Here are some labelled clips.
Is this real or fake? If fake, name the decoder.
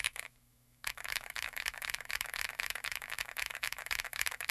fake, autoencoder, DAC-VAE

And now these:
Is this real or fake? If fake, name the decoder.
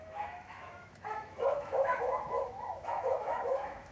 fake, autoencoder, DAC-VAE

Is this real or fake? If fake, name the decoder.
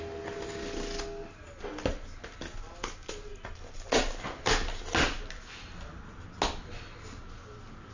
real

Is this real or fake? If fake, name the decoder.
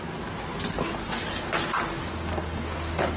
real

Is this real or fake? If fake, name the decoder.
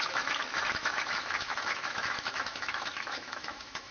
fake, autoencoder, DAC-VAE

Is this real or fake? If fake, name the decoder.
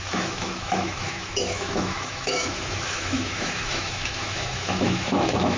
fake, autoencoder, DAC-VAE